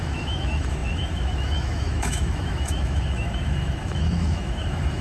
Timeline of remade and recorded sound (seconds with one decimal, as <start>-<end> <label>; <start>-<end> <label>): 0.0-5.0 remade